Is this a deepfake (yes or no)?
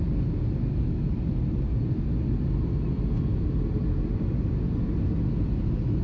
no